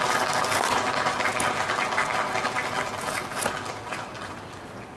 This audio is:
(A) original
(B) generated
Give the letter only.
A